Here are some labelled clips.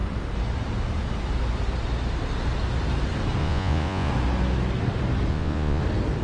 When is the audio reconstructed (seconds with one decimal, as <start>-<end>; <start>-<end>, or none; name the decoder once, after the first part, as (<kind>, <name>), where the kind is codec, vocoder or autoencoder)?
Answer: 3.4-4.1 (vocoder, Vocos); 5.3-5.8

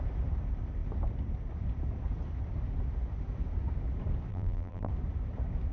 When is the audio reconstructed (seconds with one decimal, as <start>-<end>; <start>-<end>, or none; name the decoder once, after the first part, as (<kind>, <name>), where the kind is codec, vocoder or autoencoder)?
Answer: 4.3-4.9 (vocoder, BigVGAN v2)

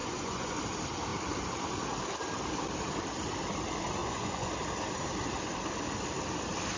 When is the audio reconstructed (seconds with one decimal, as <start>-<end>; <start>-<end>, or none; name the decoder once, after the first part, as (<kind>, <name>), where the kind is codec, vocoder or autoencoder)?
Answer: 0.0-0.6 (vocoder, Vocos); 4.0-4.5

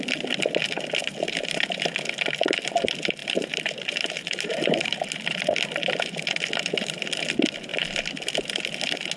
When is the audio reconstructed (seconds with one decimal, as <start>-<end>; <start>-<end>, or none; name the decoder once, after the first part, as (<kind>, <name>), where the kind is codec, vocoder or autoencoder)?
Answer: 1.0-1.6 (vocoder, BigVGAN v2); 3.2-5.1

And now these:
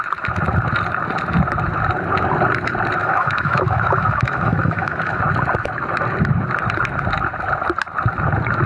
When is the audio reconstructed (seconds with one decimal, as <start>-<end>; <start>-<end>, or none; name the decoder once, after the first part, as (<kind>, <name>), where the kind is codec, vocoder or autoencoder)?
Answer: 3.0-5.2 (autoencoder, DAC-VAE)